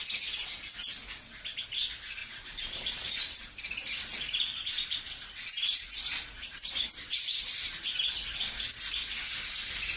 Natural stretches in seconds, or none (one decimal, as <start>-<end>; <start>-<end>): 0.0-2.2; 3.6-4.1; 8.4-10.0